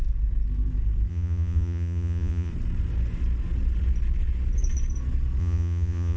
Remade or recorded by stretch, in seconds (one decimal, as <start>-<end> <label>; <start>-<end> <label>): 0.0-1.1 recorded; 1.1-2.5 remade; 2.5-5.4 recorded; 5.4-6.2 remade